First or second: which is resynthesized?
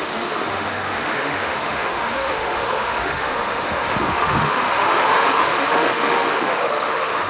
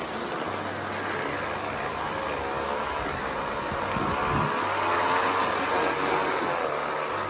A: first